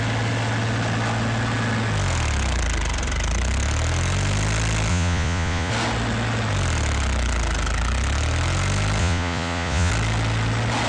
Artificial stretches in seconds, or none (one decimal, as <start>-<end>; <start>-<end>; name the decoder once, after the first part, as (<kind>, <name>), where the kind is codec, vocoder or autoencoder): 4.9-5.7 (vocoder, Vocos); 9.0-9.9